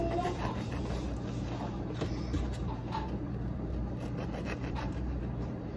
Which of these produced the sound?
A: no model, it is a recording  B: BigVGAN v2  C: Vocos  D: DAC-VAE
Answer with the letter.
B